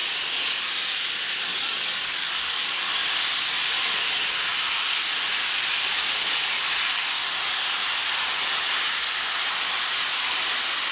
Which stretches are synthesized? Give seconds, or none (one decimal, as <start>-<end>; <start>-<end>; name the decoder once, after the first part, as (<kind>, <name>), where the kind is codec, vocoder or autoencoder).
1.5-2.9 (codec, DAC)